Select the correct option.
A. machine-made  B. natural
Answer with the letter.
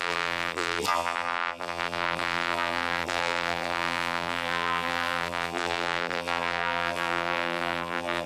A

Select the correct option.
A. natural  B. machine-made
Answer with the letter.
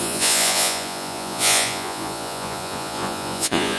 B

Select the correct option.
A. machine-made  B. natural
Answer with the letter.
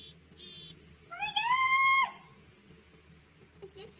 B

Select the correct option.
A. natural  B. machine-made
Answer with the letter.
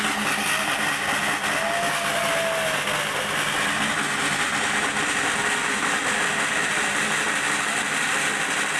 A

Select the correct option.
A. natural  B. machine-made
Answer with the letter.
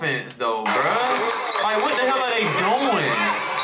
A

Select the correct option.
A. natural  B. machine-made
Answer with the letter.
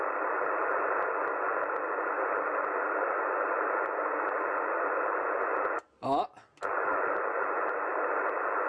A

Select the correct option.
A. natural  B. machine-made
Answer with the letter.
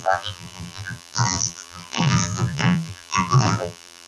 B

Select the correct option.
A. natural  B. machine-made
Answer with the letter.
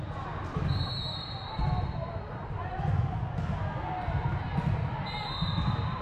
A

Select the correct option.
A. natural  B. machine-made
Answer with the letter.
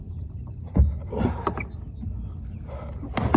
A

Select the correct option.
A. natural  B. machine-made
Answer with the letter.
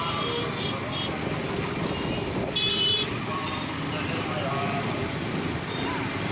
A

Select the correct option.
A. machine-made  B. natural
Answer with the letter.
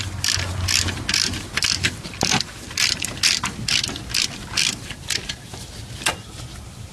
B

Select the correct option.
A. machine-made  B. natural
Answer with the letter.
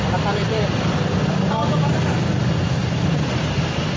B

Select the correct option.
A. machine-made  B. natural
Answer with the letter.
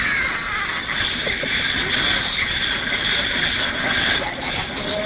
B